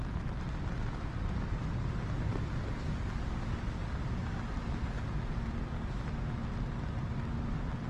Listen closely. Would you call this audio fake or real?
real